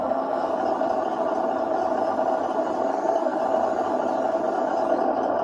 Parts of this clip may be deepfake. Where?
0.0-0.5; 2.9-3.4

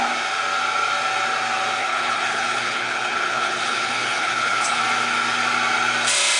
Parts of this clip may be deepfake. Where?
1.8-4.8

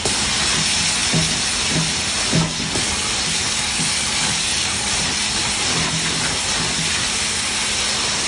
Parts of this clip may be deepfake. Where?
3.4-4.9